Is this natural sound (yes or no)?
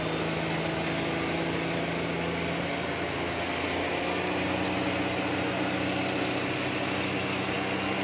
yes